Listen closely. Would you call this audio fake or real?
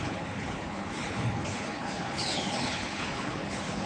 fake